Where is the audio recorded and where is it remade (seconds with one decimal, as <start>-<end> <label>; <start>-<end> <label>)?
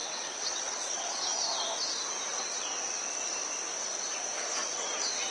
0.0-1.2 remade; 1.2-2.3 recorded; 2.3-3.0 remade; 3.0-4.6 recorded; 4.6-5.3 remade